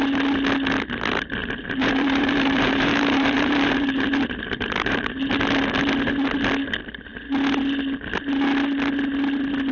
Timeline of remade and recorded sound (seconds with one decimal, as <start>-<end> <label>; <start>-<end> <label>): 0.0-1.4 recorded; 1.4-5.3 remade; 5.3-9.7 recorded